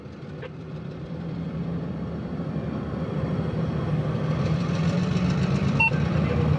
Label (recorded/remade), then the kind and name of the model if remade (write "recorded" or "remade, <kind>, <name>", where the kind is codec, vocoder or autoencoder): remade, vocoder, BigVGAN v2